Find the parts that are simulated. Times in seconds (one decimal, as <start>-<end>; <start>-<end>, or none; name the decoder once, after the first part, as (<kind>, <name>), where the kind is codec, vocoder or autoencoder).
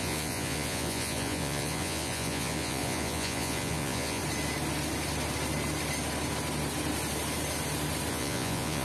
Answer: 0.0-4.2 (vocoder, Vocos); 8.1-8.8